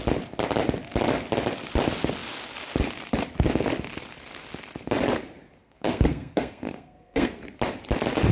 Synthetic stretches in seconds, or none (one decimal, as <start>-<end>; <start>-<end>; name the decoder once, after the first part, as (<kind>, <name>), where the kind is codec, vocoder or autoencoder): 5.6-7.4 (codec, SNAC)